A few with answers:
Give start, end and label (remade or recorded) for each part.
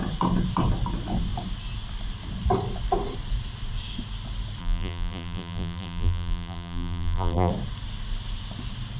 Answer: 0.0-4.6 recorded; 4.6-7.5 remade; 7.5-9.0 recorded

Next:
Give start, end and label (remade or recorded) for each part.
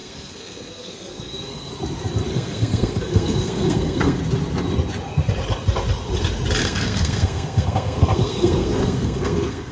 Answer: 0.0-1.7 remade; 1.7-2.3 recorded; 2.3-4.2 remade; 4.2-6.6 recorded; 6.6-9.7 remade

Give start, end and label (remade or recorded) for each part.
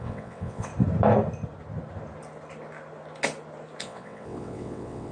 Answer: 0.0-0.7 remade; 0.7-3.8 recorded; 3.8-5.1 remade